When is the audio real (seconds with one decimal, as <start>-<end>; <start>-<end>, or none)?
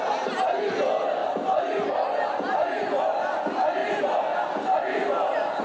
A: 0.0-5.6